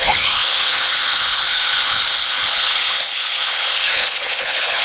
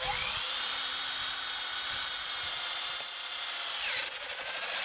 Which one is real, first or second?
second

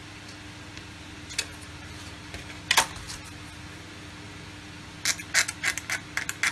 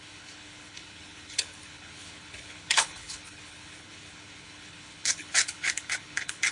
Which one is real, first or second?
first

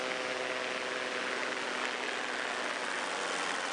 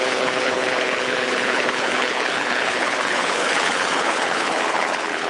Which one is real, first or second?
first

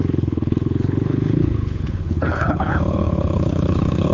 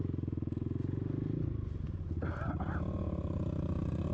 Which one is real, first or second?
second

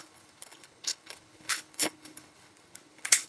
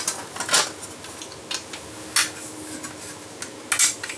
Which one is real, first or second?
second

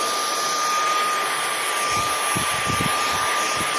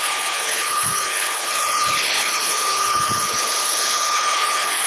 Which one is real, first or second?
first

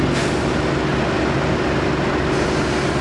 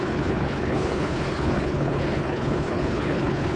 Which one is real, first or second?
first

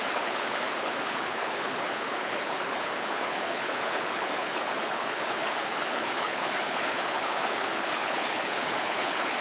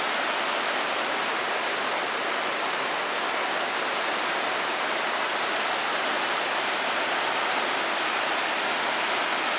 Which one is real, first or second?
second